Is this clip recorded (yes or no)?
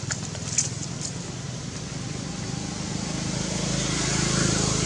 yes